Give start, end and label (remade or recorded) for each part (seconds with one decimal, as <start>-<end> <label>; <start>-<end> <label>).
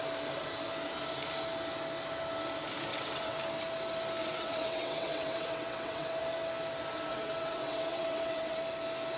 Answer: 0.0-2.9 recorded; 2.9-3.4 remade; 3.4-4.2 recorded; 4.2-6.2 remade; 6.2-7.1 recorded; 7.1-8.6 remade; 8.6-9.2 recorded